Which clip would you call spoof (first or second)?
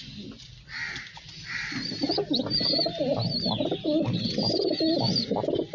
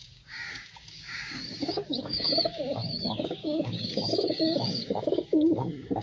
second